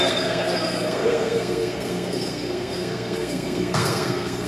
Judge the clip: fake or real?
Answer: fake